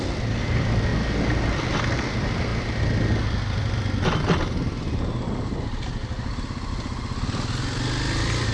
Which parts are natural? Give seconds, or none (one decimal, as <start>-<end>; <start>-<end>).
0.0-8.5